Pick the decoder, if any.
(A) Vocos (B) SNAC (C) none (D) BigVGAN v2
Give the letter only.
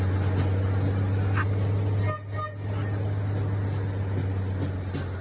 C